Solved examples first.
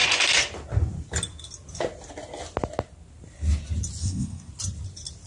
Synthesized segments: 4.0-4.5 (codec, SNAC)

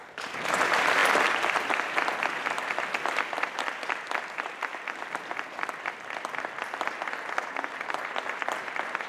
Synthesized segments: none